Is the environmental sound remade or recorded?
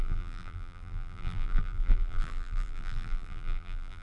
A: remade